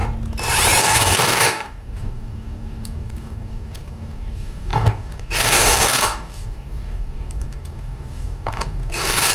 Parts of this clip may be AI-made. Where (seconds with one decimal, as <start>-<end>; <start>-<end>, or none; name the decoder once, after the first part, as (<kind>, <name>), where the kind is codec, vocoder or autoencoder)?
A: 0.8-9.3 (codec, DAC)